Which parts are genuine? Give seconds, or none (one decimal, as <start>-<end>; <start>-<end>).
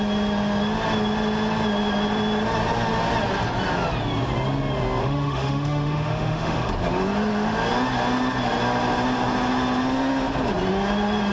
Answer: 0.0-5.0; 6.7-11.3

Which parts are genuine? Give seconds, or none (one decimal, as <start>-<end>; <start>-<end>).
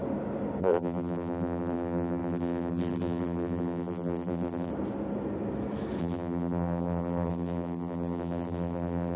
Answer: 0.0-0.6; 4.7-6.0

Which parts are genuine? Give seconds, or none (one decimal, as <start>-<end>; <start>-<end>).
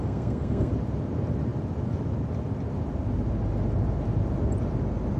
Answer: 0.7-5.2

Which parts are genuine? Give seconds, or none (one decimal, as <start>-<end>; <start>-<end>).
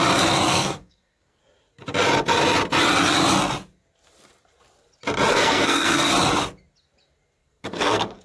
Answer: 0.0-0.5; 1.4-5.3; 6.1-7.4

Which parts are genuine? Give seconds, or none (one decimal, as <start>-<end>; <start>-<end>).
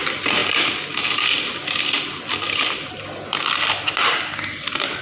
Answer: 0.0-5.0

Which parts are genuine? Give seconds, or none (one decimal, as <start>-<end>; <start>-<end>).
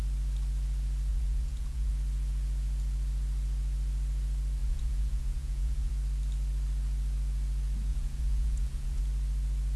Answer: 0.0-1.1; 1.9-4.6; 5.9-7.9; 9.0-9.8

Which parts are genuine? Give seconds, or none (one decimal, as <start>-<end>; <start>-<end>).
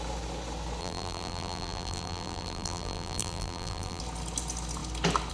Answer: 0.0-0.8; 4.0-5.3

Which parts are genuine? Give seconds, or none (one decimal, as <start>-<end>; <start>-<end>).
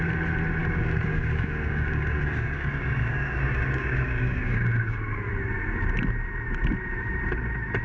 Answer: 0.0-0.6; 5.3-7.8